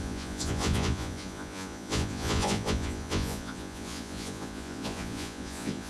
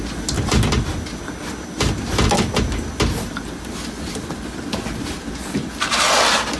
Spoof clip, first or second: first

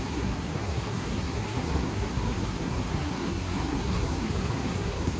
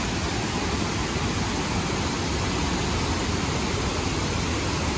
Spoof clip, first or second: first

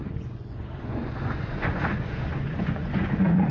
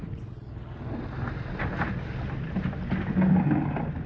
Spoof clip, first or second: first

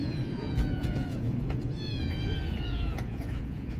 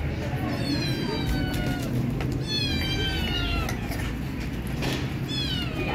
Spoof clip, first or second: first